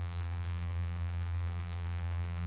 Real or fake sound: fake